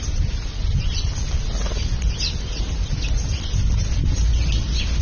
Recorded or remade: recorded